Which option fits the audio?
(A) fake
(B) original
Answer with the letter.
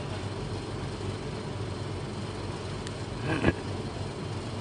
B